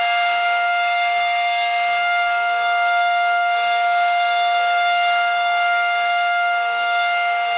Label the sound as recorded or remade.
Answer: remade